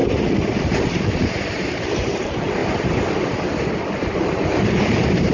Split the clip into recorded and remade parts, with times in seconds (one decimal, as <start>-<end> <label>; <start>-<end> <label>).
0.0-0.6 recorded; 0.6-2.6 remade; 2.6-3.8 recorded; 3.8-5.3 remade